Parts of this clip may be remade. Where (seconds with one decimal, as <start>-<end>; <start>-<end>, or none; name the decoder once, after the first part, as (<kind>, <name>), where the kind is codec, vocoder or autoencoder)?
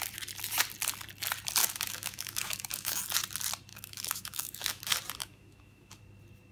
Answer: 1.6-3.0 (autoencoder, DAC-VAE); 3.7-4.8; 5.2-6.0